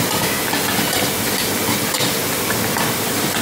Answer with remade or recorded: recorded